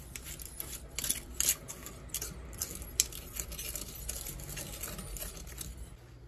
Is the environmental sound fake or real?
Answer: real